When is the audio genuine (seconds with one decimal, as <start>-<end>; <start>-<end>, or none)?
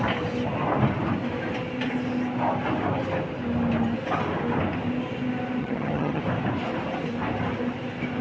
0.0-5.6; 6.2-8.2